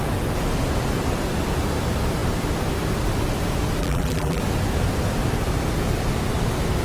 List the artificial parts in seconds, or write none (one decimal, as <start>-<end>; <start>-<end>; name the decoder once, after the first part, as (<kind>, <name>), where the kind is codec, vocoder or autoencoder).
3.8-4.4 (vocoder, BigVGAN v2)